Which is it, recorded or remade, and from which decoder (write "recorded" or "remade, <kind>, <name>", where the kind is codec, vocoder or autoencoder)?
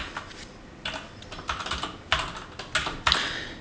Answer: recorded